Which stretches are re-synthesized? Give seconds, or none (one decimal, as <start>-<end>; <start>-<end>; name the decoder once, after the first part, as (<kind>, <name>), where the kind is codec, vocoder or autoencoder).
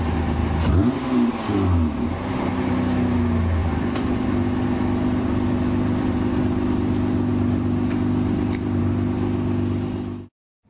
3.6-6.7 (vocoder, BigVGAN v2); 7.3-8.8